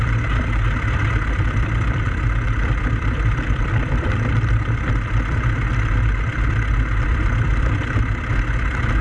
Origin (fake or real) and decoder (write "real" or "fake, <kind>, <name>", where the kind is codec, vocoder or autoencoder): fake, vocoder, BigVGAN v2